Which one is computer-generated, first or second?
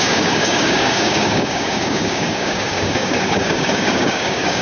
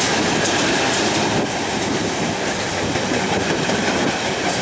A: first